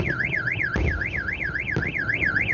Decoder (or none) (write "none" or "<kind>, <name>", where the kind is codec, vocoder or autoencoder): none